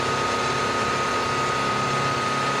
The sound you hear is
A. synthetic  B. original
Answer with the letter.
B